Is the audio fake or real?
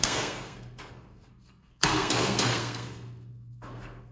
fake